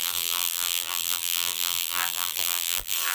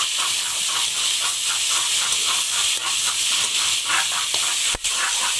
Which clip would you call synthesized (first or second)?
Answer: first